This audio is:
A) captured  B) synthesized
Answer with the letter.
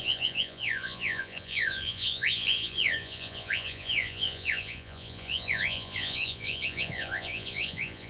B